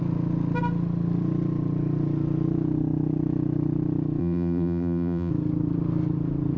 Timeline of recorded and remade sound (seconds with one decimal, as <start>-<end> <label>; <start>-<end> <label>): 0.0-4.2 recorded; 4.2-5.3 remade; 5.3-6.6 recorded